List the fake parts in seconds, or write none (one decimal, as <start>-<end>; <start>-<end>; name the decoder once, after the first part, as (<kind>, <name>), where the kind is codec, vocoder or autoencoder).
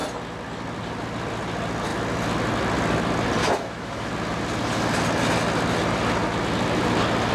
3.4-4.1 (autoencoder, DAC-VAE)